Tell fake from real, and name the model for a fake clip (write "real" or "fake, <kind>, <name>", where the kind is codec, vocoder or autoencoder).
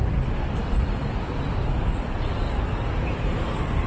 real